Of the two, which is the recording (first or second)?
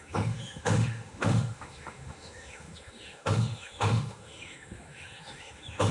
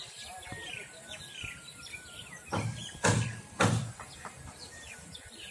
second